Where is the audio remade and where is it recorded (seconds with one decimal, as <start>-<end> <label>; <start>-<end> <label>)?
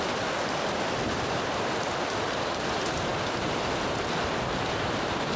0.0-5.4 recorded